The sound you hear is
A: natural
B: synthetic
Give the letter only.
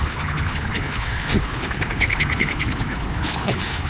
B